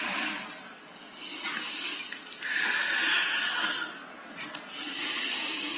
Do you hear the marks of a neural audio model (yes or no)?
no